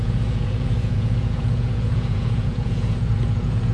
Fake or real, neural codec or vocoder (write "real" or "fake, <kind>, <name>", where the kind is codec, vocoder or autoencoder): fake, vocoder, Vocos